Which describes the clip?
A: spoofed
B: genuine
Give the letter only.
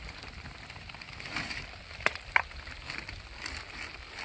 B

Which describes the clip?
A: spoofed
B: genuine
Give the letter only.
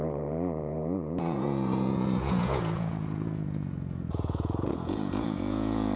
A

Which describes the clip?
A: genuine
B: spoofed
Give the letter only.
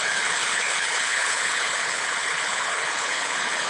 B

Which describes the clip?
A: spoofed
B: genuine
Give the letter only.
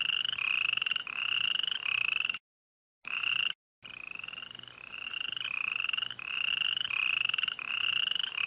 B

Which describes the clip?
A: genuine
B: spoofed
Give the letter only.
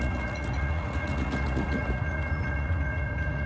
B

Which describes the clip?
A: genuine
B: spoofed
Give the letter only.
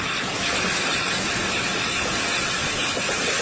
A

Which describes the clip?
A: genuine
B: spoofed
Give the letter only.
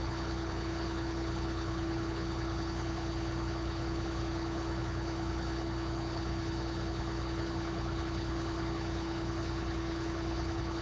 B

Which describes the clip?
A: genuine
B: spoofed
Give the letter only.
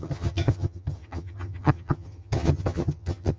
B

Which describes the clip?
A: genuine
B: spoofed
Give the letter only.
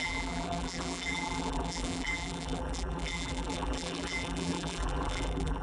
B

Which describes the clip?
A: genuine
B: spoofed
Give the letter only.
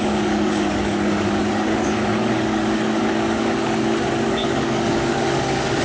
B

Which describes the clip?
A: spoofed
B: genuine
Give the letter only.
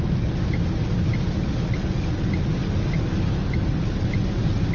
B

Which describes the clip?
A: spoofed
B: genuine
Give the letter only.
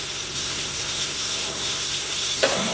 A